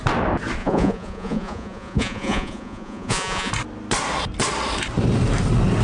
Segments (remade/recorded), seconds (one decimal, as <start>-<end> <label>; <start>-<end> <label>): 0.0-0.6 recorded; 0.6-3.5 remade; 3.5-5.8 recorded